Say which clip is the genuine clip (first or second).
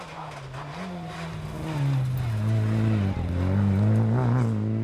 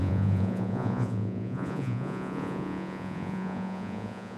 first